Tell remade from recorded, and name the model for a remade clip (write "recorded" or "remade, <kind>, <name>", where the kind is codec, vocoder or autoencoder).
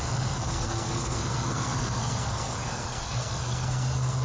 remade, codec, SNAC